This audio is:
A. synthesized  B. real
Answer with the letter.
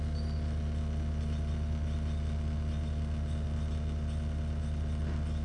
B